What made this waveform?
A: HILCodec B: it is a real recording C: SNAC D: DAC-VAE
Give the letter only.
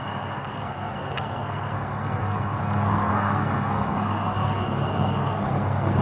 C